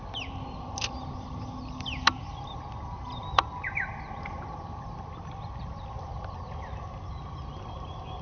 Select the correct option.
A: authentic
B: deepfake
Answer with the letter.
A